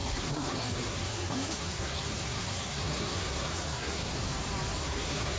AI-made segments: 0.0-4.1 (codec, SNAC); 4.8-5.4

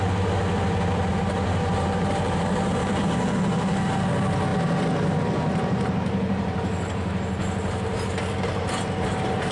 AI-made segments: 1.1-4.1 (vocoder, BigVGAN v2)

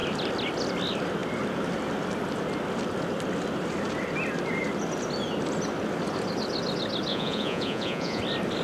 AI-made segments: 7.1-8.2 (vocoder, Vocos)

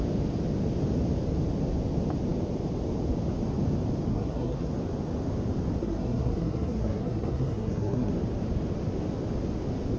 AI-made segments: 4.1-4.7 (codec, SNAC); 5.8-8.1